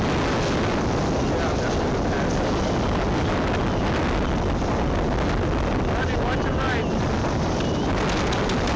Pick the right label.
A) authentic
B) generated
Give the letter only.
A